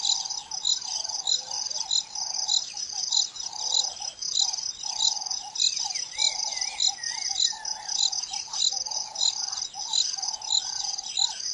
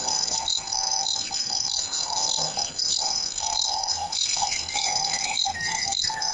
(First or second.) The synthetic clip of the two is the second